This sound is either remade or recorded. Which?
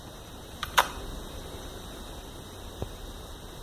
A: remade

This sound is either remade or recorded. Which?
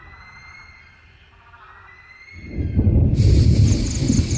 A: remade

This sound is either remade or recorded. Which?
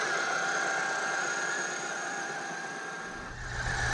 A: recorded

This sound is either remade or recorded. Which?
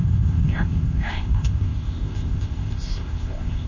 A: remade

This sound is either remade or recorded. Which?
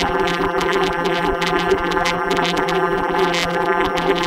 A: remade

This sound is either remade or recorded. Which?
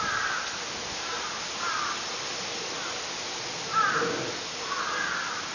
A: recorded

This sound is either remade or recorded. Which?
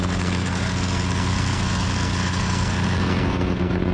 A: remade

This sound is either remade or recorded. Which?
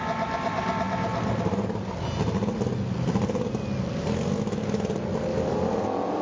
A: recorded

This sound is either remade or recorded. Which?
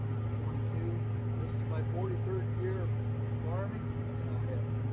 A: recorded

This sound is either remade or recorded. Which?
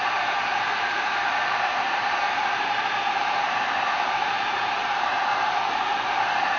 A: remade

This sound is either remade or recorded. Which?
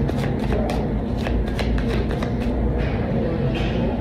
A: recorded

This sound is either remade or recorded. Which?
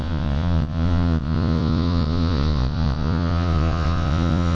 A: remade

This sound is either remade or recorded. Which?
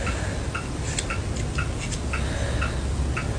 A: recorded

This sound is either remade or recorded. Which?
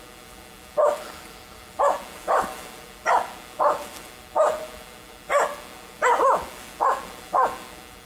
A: recorded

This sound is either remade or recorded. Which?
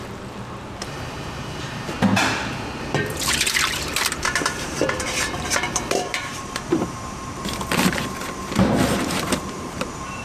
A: remade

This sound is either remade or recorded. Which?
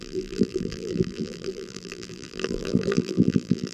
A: remade